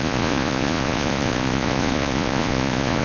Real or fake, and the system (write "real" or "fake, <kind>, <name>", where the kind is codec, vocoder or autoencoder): fake, vocoder, Vocos